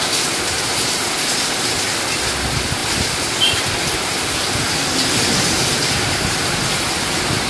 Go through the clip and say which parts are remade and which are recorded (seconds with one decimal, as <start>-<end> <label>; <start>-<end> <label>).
0.0-7.5 recorded